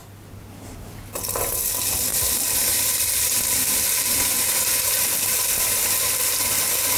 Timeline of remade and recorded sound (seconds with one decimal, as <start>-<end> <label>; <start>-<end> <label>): 0.0-2.1 recorded; 2.1-6.3 remade; 6.3-7.0 recorded